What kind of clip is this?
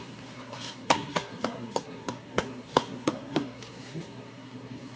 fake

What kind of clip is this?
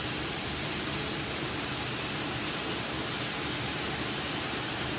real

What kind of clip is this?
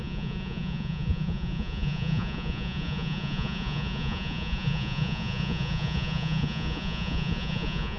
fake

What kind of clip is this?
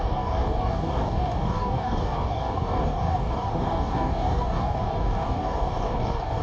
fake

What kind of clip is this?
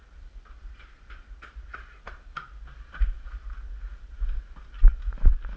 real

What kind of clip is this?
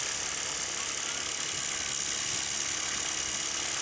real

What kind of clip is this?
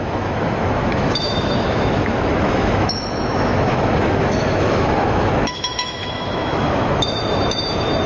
fake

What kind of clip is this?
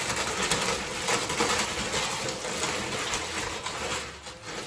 real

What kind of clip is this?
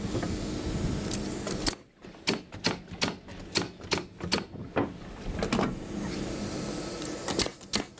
real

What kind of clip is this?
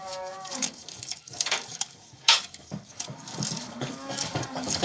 fake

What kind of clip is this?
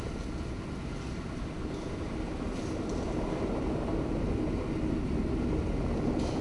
real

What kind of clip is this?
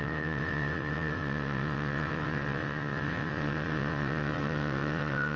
fake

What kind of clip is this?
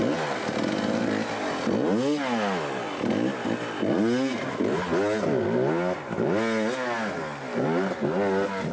real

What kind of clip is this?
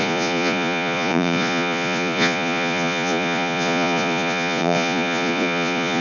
fake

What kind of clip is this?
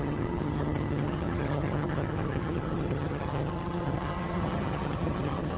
fake